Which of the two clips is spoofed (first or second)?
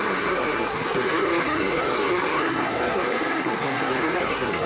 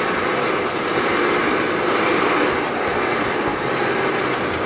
first